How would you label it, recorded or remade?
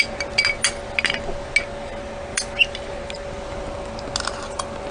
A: recorded